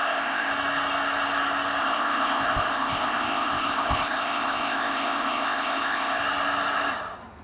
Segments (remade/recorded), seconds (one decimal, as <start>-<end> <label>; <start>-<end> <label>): 0.0-0.5 remade; 0.5-1.8 recorded; 1.8-6.2 remade; 6.2-7.4 recorded